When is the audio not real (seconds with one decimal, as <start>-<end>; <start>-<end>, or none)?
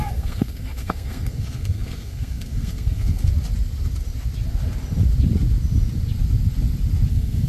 0.0-3.3; 7.1-7.5